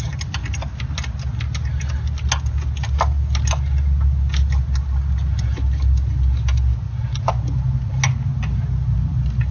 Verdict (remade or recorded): recorded